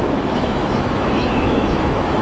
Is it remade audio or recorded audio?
remade